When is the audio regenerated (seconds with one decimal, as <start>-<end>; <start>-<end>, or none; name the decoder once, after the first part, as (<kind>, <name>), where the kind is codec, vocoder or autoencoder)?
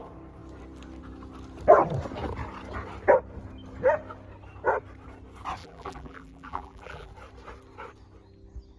5.6-7.1 (vocoder, BigVGAN v2)